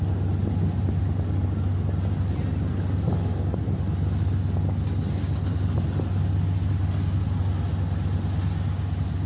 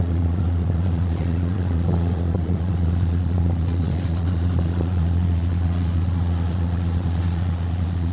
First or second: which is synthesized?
second